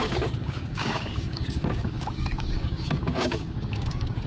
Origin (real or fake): fake